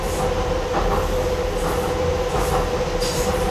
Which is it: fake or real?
real